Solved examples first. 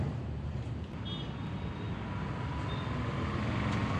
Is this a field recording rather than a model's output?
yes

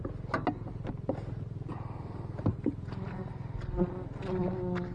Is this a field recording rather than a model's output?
yes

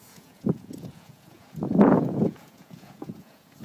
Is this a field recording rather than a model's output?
no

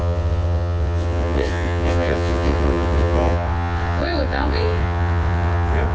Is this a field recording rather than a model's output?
no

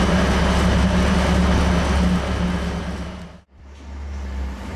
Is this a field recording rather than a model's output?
yes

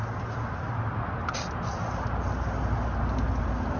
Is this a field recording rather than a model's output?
yes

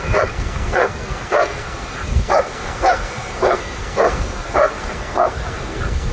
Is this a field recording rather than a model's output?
no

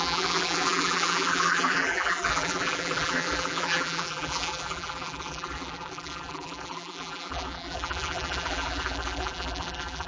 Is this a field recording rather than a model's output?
no